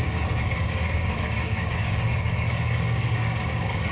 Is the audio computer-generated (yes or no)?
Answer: yes